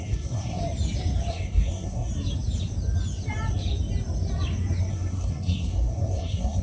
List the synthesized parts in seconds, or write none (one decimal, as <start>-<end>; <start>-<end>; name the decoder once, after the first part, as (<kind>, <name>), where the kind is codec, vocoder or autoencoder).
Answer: 0.0-0.6 (codec, SNAC); 1.3-2.1; 4.9-6.6